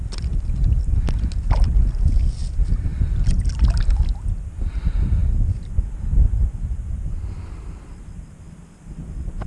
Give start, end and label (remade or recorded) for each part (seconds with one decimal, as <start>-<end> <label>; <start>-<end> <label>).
0.0-9.5 recorded

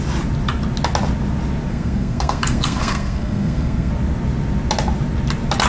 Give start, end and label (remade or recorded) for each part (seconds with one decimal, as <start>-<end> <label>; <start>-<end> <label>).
0.0-1.7 recorded; 1.7-3.9 remade; 3.9-5.7 recorded

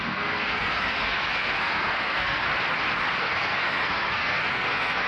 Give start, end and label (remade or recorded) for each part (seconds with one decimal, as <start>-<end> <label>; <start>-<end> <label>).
0.0-2.5 remade; 2.5-3.2 recorded; 3.2-5.1 remade

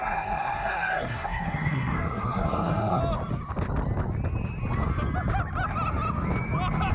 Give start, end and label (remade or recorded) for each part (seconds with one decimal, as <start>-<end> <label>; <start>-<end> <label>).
0.0-3.0 remade; 3.0-6.9 recorded

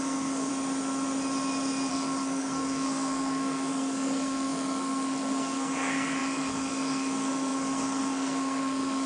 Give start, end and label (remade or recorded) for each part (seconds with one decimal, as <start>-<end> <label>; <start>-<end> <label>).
0.0-0.5 remade; 0.5-1.9 recorded; 1.9-9.1 remade

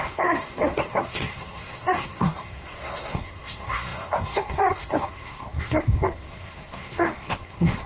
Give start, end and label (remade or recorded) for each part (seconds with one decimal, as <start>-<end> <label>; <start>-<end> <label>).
0.0-7.9 remade

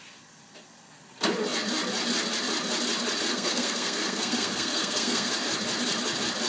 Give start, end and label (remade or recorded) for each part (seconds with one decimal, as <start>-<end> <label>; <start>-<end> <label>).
0.0-3.3 recorded; 3.3-5.3 remade; 5.3-6.5 recorded